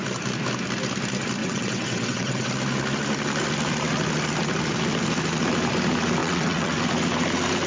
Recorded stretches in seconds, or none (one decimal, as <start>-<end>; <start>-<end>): 0.0-1.4; 2.5-6.2; 6.8-7.7